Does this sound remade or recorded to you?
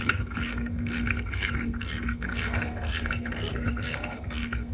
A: remade